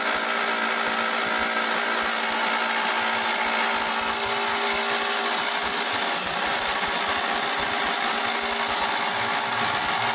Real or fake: real